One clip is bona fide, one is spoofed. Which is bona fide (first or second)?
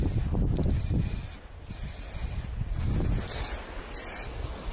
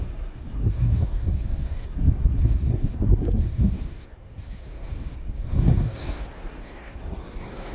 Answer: first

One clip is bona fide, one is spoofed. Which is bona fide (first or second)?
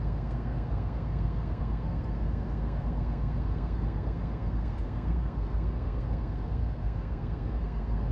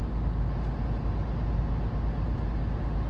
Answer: second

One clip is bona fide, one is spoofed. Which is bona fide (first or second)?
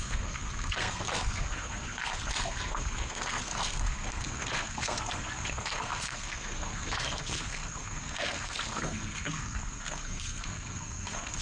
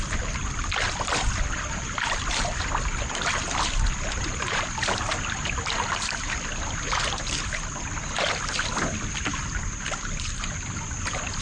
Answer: second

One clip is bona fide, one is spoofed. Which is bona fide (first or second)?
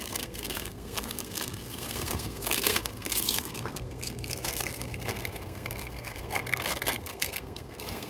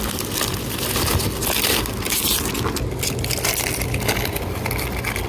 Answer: second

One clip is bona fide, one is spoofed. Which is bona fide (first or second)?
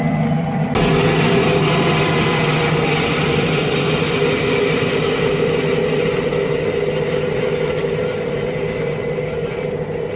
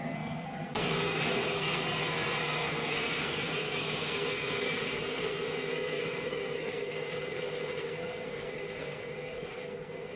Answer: first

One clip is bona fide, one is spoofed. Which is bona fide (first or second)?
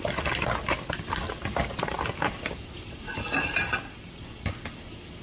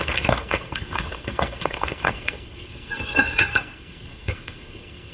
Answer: first